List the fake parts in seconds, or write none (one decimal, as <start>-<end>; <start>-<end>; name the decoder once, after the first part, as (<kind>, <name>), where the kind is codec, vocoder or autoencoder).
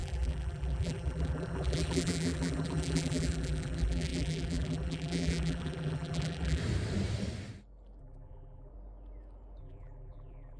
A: 0.0-6.6 (vocoder, BigVGAN v2); 8.0-8.7; 9.6-10.6